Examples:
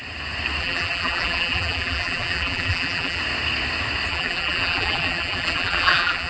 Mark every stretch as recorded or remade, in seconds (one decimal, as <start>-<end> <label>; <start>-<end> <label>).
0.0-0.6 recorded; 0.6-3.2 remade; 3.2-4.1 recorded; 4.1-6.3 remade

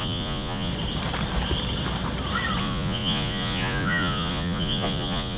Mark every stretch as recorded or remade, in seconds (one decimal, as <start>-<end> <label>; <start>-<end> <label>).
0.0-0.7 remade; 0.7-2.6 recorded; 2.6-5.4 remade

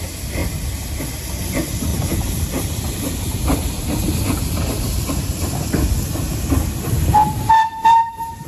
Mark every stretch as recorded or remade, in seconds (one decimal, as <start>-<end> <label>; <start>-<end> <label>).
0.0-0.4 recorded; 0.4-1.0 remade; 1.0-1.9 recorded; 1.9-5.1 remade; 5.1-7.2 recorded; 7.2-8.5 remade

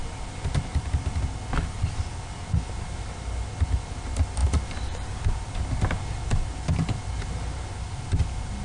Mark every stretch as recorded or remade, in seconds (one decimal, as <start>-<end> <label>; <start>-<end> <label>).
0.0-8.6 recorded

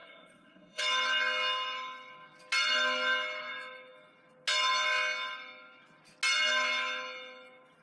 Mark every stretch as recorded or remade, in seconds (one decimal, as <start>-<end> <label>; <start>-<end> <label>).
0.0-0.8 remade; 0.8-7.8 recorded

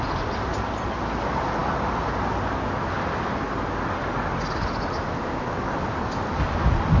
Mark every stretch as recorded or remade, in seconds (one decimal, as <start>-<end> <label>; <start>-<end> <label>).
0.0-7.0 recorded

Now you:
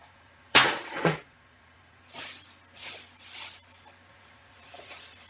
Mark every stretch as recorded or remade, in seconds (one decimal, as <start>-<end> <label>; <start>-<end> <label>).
0.0-2.0 remade; 2.0-4.1 recorded; 4.1-5.3 remade

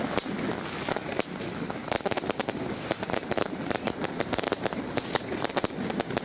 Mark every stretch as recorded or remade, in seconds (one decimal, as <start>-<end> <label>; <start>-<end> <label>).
0.0-1.8 recorded; 1.8-5.5 remade; 5.5-6.2 recorded